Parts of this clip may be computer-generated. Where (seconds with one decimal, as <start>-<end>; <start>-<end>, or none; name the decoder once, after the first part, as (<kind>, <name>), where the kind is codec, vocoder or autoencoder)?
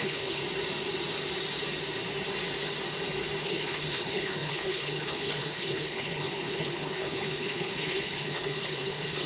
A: 0.0-0.4 (codec, HILCodec); 3.4-9.3